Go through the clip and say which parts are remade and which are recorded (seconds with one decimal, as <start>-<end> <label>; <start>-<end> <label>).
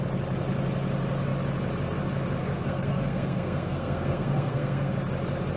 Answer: 0.0-2.4 recorded; 2.4-4.9 remade; 4.9-5.6 recorded